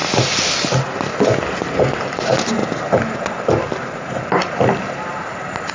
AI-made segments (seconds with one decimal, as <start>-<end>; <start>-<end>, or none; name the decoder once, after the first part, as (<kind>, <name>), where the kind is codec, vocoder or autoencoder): none